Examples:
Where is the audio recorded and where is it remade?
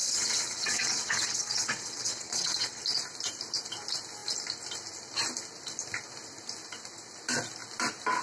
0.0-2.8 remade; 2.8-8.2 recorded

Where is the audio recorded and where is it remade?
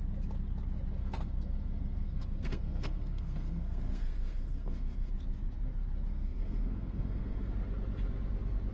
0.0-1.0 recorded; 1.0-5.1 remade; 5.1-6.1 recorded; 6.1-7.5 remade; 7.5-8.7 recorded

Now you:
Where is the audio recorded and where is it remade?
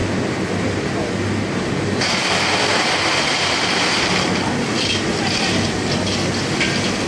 0.0-7.1 recorded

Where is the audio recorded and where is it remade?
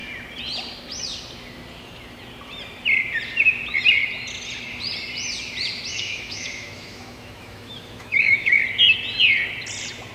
0.0-5.9 recorded; 5.9-8.6 remade; 8.6-10.1 recorded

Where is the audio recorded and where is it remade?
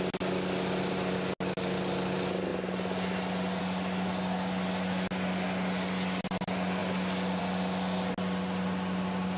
0.0-9.4 recorded